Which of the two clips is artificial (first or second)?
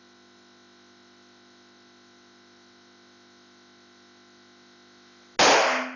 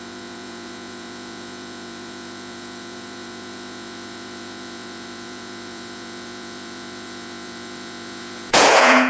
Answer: second